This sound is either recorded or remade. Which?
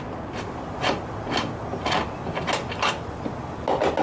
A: recorded